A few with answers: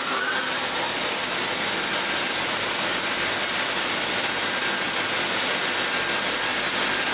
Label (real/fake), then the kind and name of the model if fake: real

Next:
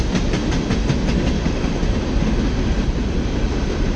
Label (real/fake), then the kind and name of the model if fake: real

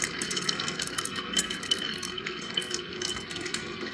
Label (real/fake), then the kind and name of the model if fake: fake, codec, SNAC